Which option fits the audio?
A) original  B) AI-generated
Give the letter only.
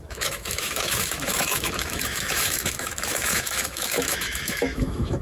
B